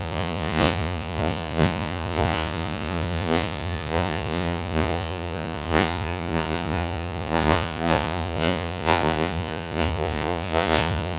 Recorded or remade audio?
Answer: remade